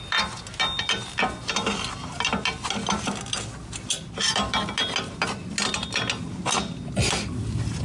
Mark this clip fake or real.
real